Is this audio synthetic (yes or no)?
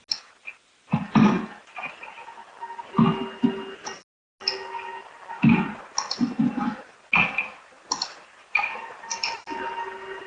no